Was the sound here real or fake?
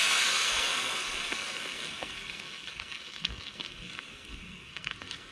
fake